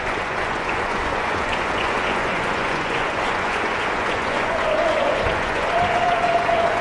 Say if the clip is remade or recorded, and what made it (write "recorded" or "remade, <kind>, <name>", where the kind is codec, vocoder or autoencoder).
remade, vocoder, Vocos